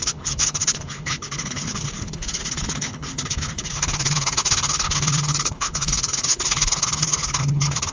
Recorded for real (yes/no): no